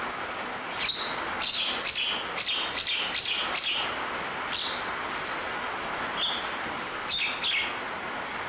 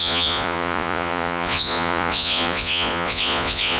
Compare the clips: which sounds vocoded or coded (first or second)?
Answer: second